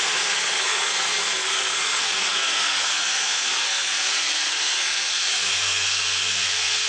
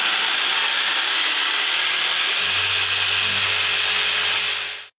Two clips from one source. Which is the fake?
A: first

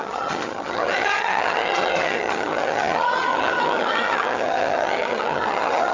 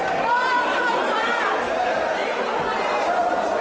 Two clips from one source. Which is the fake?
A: first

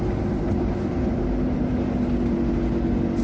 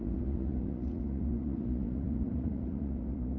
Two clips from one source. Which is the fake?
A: second